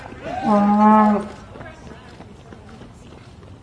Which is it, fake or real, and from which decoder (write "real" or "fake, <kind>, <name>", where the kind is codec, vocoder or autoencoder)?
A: real